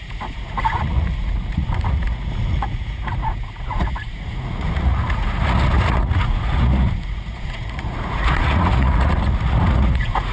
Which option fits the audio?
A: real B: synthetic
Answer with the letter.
B